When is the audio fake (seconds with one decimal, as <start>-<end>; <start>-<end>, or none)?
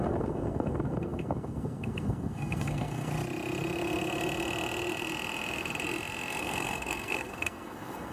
0.0-3.1; 6.4-8.1